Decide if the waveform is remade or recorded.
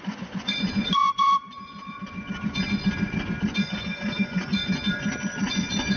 remade